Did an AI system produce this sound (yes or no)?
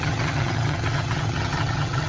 yes